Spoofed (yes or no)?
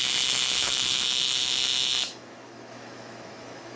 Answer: yes